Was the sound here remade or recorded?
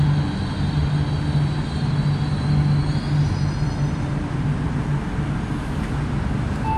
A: recorded